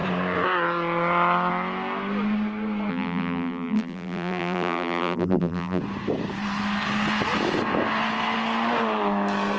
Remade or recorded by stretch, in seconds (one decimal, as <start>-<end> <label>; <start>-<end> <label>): 0.0-2.9 recorded; 2.9-5.8 remade; 5.8-9.6 recorded